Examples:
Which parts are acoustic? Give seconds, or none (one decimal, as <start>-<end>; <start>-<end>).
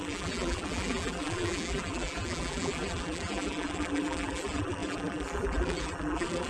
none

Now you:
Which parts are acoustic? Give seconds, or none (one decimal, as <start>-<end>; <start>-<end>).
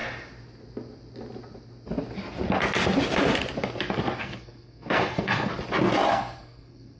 0.0-4.2; 5.5-6.1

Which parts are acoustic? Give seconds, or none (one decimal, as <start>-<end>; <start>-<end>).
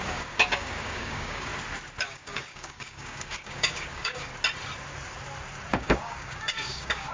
1.5-2.0; 4.3-5.7